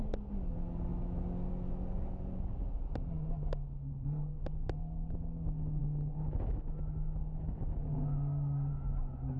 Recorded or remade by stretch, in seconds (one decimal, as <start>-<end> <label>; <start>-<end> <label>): 0.0-9.4 recorded